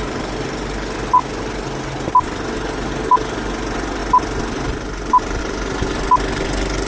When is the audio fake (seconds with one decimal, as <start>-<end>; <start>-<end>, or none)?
none